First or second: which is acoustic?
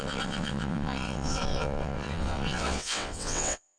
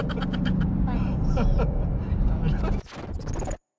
second